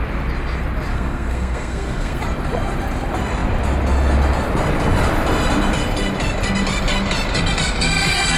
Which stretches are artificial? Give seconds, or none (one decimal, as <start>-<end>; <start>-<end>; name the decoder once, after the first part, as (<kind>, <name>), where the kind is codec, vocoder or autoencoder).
0.9-2.2 (codec, SNAC)